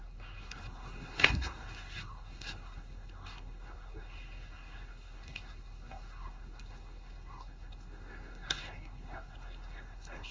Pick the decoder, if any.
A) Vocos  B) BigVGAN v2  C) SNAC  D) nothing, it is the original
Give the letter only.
C